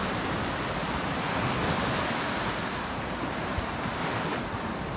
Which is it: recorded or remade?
recorded